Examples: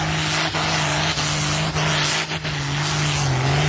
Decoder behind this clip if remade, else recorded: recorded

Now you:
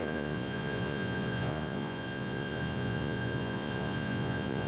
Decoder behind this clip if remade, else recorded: remade, vocoder, Vocos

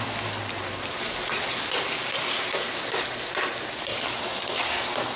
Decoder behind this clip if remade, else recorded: recorded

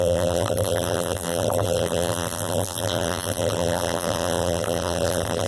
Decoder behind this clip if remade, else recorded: remade, vocoder, BigVGAN v2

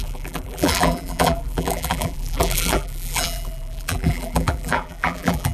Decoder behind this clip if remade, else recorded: remade, vocoder, BigVGAN v2